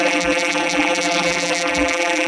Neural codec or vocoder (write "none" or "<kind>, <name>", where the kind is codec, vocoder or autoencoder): vocoder, BigVGAN v2